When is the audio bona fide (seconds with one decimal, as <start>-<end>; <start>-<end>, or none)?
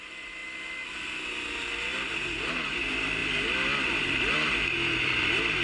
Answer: 0.4-2.5